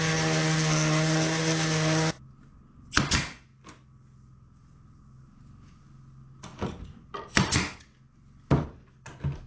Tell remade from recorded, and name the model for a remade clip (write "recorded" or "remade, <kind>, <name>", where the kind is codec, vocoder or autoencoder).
recorded